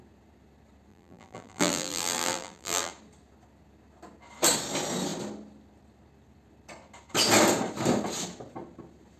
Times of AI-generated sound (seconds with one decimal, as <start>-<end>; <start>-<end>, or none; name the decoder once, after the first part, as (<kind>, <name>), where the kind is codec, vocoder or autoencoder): 0.9-2.9 (vocoder, BigVGAN v2)